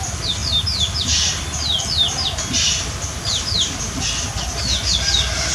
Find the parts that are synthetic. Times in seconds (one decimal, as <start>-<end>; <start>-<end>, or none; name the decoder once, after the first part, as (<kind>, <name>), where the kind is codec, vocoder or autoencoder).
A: none